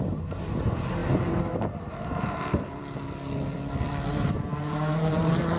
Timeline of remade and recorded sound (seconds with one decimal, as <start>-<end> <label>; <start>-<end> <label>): 0.0-2.8 remade; 2.8-4.1 recorded; 4.1-5.6 remade